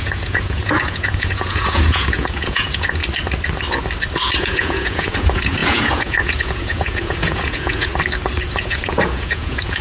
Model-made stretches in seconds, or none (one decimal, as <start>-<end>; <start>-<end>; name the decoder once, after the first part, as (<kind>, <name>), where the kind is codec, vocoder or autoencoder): 0.0-3.0 (vocoder, Vocos); 4.4-7.9; 8.6-9.8